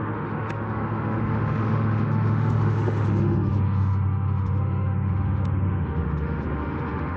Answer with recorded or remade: remade